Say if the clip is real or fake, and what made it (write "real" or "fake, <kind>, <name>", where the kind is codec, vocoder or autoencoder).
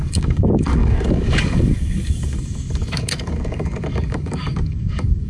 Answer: fake, codec, DAC